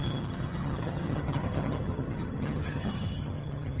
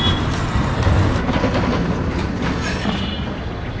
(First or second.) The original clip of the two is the second